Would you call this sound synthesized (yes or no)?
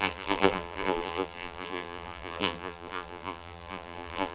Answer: yes